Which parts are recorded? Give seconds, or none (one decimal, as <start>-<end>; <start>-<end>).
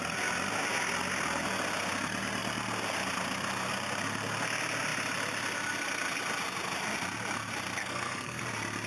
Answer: 0.0-7.8; 8.4-8.9